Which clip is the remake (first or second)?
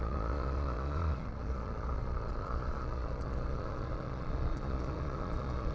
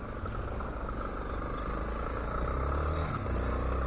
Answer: first